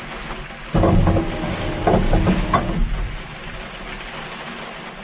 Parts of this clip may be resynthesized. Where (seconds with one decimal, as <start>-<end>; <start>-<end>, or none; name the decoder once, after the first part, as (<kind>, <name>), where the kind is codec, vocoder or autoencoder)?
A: none